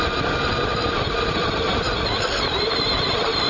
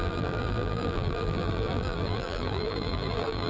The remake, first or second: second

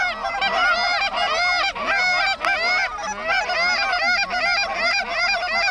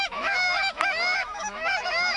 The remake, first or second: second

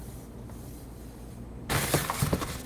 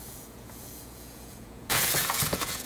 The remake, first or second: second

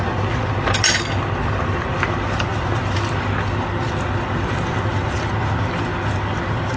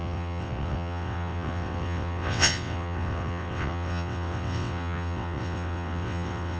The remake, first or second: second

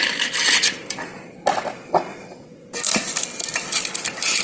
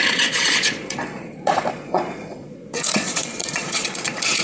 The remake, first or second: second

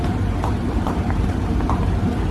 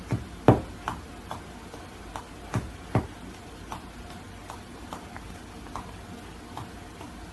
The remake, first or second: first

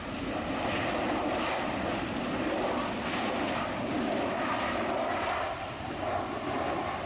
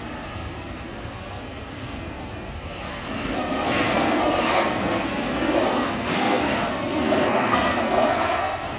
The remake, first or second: second